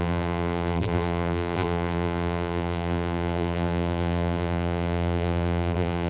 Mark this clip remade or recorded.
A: remade